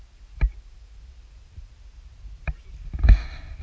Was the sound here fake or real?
real